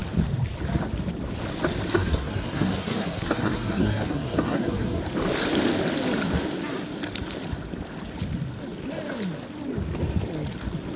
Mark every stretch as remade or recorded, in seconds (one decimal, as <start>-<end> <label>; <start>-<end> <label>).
0.0-1.9 recorded; 1.9-5.0 remade; 5.0-11.0 recorded